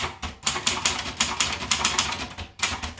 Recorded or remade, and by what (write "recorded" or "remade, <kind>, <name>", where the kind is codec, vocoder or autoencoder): recorded